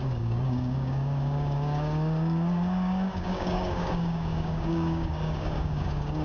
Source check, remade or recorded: remade